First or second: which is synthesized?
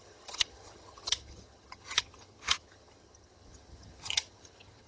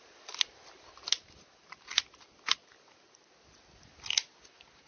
first